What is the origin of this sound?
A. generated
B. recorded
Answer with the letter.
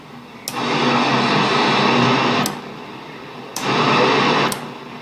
B